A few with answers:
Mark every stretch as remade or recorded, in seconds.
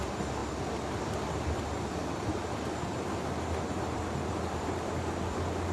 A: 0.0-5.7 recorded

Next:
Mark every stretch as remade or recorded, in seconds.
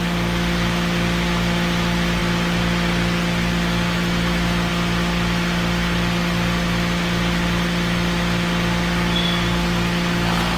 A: 0.0-10.6 recorded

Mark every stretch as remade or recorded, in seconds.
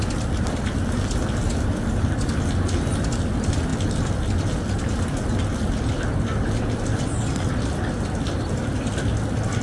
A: 0.0-9.6 recorded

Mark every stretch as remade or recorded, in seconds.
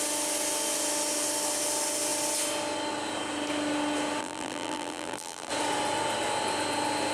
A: 0.0-4.2 recorded; 4.2-5.5 remade; 5.5-7.1 recorded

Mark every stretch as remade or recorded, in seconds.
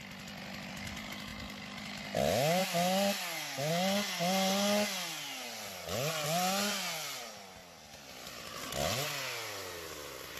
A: 0.0-10.4 recorded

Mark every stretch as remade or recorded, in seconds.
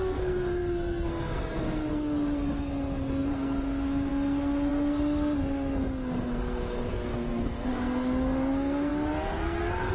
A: 0.0-9.9 remade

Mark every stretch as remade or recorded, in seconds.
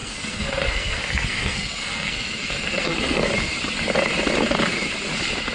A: 0.0-3.3 remade; 3.3-5.5 recorded